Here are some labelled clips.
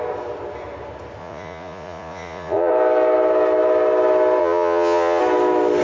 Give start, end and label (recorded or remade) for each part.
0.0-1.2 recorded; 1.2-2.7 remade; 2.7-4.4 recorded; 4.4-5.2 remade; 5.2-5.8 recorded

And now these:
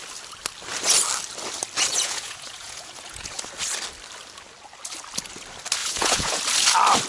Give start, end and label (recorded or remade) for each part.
0.0-1.9 recorded; 1.9-3.4 remade; 3.4-5.8 recorded; 5.8-6.4 remade; 6.4-7.1 recorded